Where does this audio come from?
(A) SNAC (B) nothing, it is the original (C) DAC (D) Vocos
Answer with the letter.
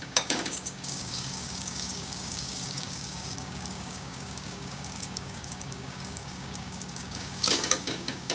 C